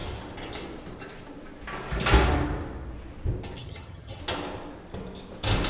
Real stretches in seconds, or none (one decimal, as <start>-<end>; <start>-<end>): 0.0-3.6; 4.2-5.7